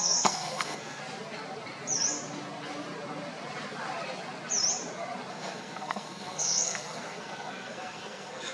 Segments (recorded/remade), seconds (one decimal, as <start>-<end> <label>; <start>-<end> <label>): 0.0-1.0 remade; 1.0-5.3 recorded; 5.3-8.5 remade